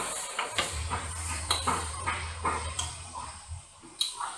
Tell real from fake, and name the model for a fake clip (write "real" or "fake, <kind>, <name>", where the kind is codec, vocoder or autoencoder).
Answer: fake, vocoder, BigVGAN v2